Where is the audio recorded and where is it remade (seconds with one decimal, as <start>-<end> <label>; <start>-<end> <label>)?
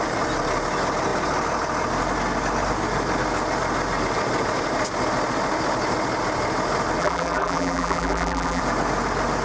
0.0-7.0 recorded; 7.0-8.6 remade; 8.6-9.4 recorded